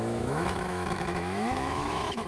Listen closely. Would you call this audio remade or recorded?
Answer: remade